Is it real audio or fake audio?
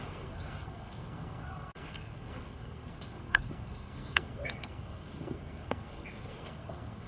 fake